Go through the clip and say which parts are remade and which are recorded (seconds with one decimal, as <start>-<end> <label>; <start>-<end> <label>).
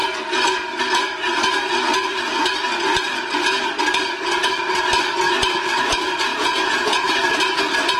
0.0-6.3 recorded; 6.3-7.4 remade; 7.4-8.0 recorded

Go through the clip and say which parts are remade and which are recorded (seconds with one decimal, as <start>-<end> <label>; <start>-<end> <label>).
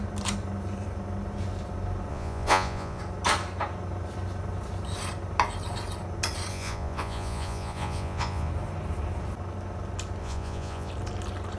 0.0-2.1 recorded; 2.1-3.0 remade; 3.0-6.5 recorded; 6.5-8.5 remade; 8.5-10.2 recorded; 10.2-10.9 remade; 10.9-11.6 recorded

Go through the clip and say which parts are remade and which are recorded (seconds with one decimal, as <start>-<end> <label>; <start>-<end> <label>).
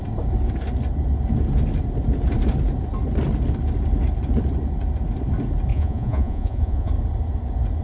0.0-5.7 recorded; 5.7-6.9 remade; 6.9-7.8 recorded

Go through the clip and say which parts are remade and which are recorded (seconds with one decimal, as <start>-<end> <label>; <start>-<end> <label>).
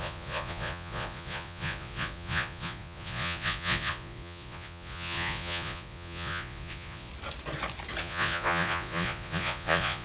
0.0-7.1 remade; 7.1-8.0 recorded; 8.0-10.0 remade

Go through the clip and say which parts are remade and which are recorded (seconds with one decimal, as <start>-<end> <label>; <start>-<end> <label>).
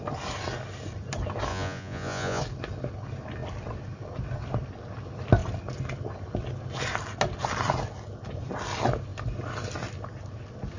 0.0-1.5 recorded; 1.5-2.4 remade; 2.4-10.8 recorded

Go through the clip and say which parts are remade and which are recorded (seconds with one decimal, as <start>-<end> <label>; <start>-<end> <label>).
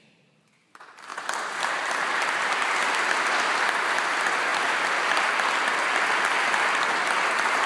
0.0-7.7 recorded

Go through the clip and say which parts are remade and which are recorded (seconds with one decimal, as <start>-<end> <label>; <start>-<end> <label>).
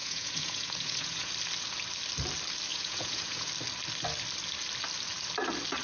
0.0-1.3 remade; 1.3-2.7 recorded; 2.7-3.5 remade; 3.5-5.8 recorded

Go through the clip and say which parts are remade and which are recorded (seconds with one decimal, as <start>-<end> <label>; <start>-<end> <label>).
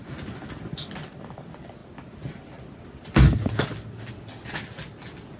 0.0-5.4 recorded